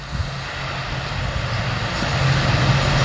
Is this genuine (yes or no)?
yes